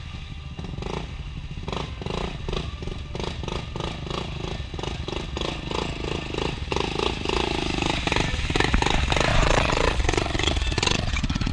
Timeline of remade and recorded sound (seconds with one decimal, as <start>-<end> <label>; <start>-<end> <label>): 0.0-9.3 recorded; 9.3-11.5 remade